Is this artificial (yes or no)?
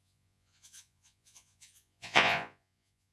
yes